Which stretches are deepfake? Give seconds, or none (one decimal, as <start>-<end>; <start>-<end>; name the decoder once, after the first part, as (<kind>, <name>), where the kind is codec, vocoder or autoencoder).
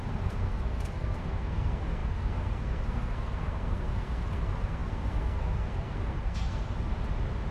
0.0-6.9 (codec, SNAC)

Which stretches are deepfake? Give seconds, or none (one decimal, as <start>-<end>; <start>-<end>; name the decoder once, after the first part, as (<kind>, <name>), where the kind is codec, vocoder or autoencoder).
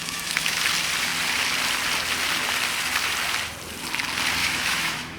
0.0-0.6 (autoencoder, DAC-VAE); 4.4-5.2